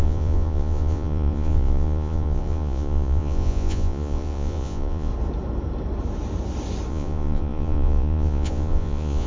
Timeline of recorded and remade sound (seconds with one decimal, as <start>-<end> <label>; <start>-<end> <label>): 0.0-5.1 remade; 5.1-6.9 recorded; 6.9-9.3 remade